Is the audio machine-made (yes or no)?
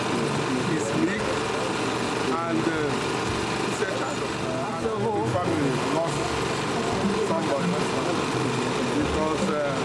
no